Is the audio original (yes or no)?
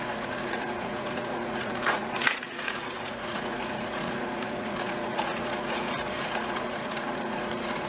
no